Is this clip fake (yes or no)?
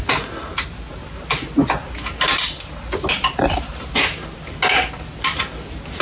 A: no